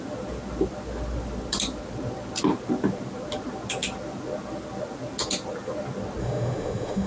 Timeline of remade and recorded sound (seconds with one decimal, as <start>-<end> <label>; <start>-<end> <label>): 0.0-6.2 recorded; 6.2-7.1 remade